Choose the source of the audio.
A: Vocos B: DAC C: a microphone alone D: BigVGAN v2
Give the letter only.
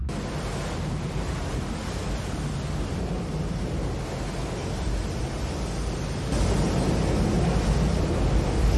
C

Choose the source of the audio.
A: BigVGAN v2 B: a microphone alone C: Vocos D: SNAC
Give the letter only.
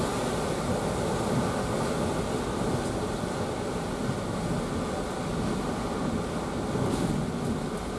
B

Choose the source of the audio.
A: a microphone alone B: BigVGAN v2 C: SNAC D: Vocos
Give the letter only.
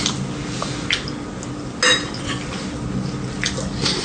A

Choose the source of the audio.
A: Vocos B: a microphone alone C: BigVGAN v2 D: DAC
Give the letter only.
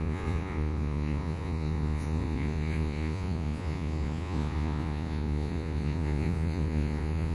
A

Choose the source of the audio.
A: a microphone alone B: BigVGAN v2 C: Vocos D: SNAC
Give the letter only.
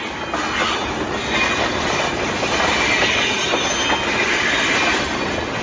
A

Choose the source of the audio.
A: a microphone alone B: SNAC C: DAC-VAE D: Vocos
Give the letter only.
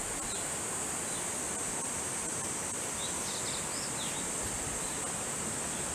A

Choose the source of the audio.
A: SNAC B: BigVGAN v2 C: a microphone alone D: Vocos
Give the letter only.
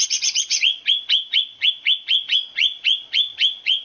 D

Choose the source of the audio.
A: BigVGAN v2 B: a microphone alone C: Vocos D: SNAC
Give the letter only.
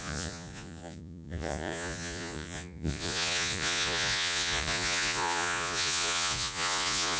C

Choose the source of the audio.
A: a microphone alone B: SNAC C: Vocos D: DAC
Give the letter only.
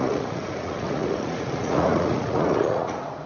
C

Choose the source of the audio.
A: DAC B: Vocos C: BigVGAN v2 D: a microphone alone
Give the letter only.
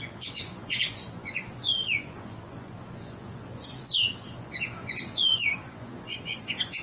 B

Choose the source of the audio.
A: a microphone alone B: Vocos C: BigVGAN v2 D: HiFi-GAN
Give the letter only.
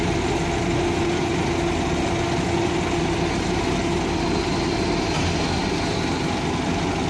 A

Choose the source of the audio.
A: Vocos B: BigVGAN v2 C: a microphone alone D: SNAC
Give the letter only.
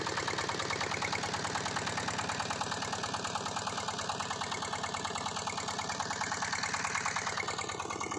C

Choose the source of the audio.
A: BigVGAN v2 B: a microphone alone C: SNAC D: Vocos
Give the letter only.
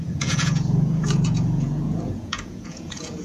D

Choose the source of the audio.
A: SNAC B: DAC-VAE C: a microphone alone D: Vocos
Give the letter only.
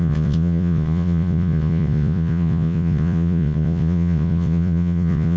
D